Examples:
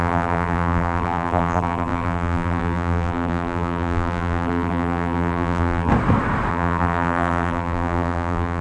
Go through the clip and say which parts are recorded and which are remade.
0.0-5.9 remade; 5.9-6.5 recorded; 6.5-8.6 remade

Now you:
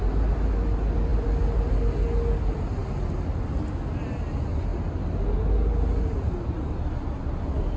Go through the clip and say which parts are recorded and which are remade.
0.0-7.8 recorded

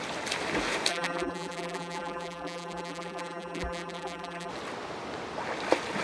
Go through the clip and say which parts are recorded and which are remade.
0.0-0.9 recorded; 0.9-4.5 remade; 4.5-6.0 recorded

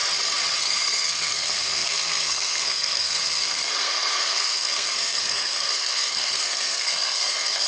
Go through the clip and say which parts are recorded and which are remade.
0.0-0.6 recorded; 0.6-7.7 remade

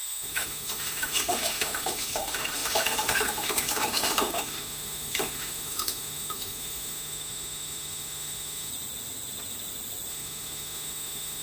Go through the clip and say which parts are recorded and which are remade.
0.0-8.7 remade; 8.7-10.1 recorded; 10.1-11.4 remade

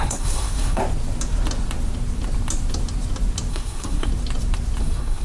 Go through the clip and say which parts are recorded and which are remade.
0.0-0.8 remade; 0.8-3.5 recorded; 3.5-4.1 remade; 4.1-4.8 recorded; 4.8-5.2 remade

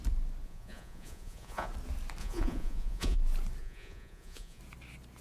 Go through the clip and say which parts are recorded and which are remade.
0.0-0.4 recorded; 0.4-1.7 remade; 1.7-2.2 recorded; 2.2-3.2 remade; 3.2-3.6 recorded; 3.6-4.6 remade; 4.6-5.2 recorded